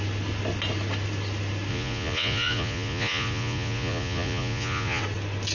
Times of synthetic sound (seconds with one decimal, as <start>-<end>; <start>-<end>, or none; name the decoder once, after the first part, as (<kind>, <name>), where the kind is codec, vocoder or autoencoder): 1.7-5.0 (vocoder, Vocos)